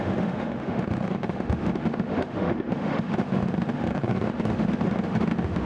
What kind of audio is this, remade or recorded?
remade